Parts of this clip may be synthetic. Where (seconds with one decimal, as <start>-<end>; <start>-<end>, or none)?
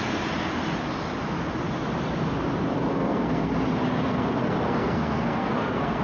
2.9-3.5; 4.0-6.0